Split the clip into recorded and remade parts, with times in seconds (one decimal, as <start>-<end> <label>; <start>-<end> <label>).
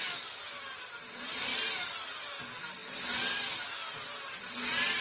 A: 0.0-5.0 recorded